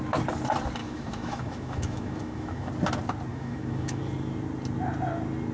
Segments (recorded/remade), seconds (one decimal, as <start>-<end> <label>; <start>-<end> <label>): 0.0-0.8 recorded; 0.8-2.7 remade; 2.7-3.3 recorded; 3.3-4.0 remade; 4.0-5.5 recorded